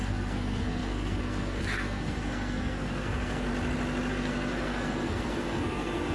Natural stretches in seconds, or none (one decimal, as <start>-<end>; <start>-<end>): 3.5-4.1

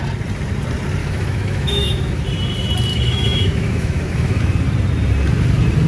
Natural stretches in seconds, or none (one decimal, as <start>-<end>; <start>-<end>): 0.0-1.0; 2.2-2.9; 4.4-5.9